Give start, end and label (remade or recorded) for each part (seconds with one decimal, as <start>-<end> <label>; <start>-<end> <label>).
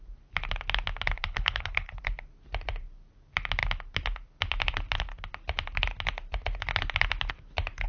0.0-1.2 recorded; 1.2-2.0 remade; 2.0-7.9 recorded